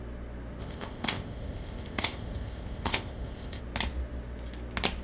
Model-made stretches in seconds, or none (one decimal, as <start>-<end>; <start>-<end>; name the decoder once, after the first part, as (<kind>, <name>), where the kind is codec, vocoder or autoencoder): 0.6-3.6 (codec, ZipCodec)

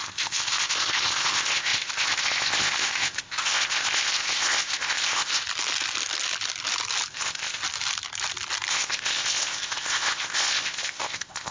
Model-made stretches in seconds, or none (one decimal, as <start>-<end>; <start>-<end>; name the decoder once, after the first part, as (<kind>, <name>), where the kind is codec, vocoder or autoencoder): 0.0-5.4 (codec, ZipCodec); 7.1-7.6; 8.7-11.5

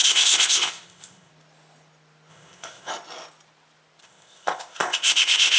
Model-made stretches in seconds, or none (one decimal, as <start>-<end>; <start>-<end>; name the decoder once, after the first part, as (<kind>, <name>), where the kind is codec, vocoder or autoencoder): 0.0-1.3 (codec, ZipCodec); 2.3-2.9; 4.0-5.6

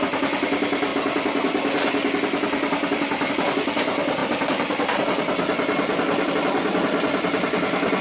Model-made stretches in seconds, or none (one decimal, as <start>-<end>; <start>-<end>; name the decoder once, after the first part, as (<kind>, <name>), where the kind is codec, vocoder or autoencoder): none